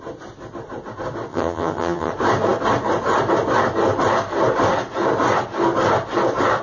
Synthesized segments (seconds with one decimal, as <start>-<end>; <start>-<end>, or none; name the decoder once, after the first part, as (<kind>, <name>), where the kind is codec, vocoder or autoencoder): 1.3-2.1 (vocoder, HiFi-GAN)